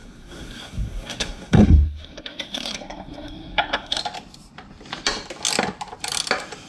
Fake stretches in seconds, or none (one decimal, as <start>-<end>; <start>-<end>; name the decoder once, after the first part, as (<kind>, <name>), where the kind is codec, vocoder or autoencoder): 0.0-4.0 (codec, SNAC)